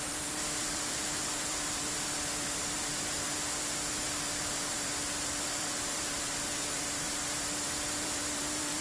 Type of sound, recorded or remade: remade